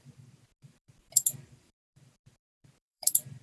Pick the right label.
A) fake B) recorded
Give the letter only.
A